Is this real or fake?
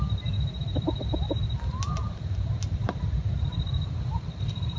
real